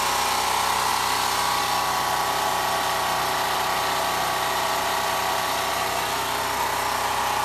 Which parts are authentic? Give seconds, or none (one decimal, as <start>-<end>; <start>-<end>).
0.0-0.9; 1.6-7.4